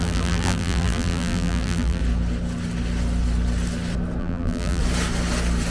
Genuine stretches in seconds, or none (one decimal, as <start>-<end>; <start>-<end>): 2.0-4.2; 4.8-5.7